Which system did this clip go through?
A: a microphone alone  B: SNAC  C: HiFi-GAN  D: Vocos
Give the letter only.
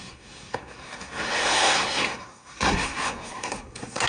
B